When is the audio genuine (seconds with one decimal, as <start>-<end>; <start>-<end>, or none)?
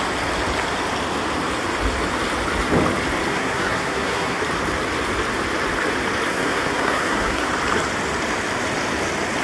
0.0-3.3; 4.4-6.3; 7.5-9.4